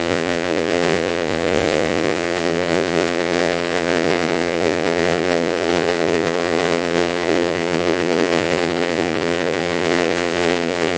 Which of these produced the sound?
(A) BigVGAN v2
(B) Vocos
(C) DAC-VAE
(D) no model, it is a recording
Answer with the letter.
B